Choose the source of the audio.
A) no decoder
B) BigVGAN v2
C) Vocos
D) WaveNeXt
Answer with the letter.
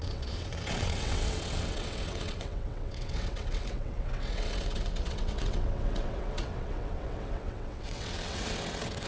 D